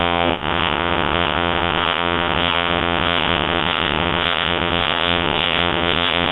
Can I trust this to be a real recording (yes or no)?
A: no